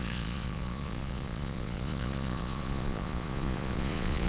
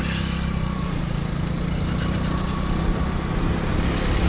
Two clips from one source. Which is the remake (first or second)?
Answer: first